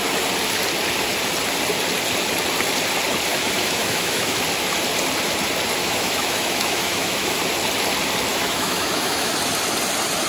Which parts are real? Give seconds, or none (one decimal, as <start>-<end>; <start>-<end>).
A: 0.0-3.3; 4.4-5.8; 7.4-8.3; 9.3-10.3